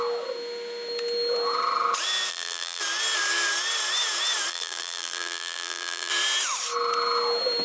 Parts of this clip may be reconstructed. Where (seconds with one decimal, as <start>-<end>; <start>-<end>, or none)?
2.3-2.8; 4.5-6.1